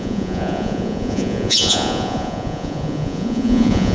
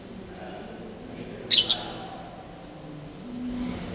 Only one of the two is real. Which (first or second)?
second